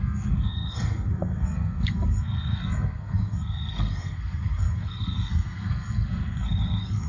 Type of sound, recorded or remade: remade